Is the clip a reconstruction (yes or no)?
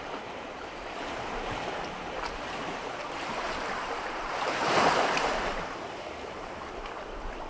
yes